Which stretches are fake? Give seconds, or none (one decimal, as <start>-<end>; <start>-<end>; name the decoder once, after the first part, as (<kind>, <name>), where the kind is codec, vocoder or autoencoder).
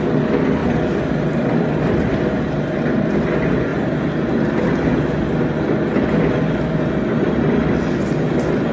0.6-1.7 (vocoder, BigVGAN v2); 3.7-4.6